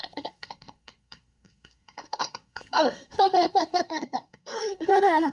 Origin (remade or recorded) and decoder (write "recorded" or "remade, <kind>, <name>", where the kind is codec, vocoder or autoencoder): remade, codec, SNAC